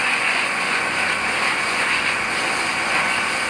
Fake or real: fake